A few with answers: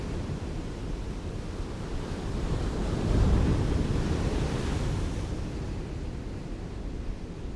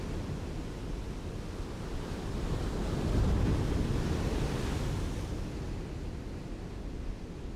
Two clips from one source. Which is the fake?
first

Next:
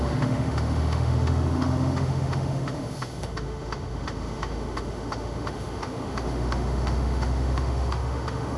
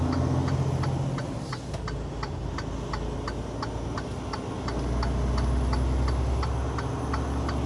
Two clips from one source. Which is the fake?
first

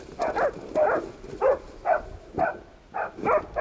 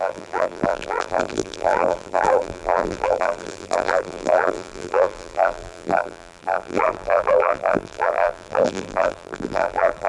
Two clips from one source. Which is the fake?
second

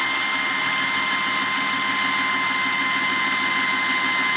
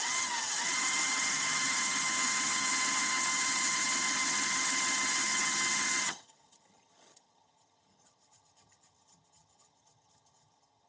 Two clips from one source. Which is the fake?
second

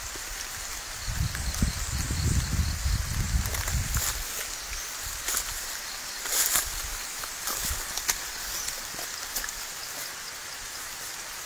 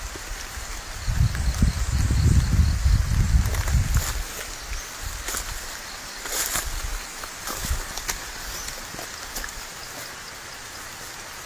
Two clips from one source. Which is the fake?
first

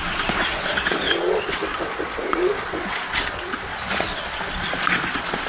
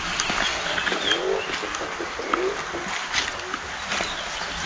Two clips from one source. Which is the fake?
first